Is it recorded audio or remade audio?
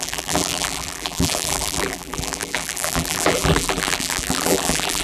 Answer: remade